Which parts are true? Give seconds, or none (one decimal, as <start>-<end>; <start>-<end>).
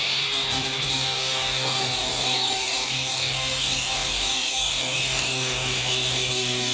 none